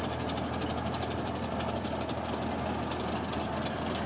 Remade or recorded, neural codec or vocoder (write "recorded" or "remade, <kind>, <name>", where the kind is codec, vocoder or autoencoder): recorded